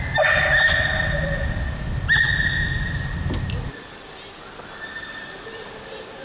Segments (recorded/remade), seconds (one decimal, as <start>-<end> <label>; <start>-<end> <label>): 0.0-6.2 recorded